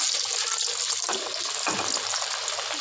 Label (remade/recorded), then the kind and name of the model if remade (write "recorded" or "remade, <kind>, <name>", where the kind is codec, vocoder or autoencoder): recorded